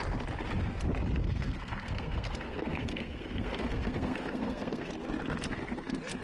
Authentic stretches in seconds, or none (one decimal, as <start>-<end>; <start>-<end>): 0.0-1.2; 4.9-6.2